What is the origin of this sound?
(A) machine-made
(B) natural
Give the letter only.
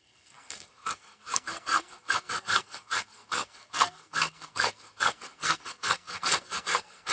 A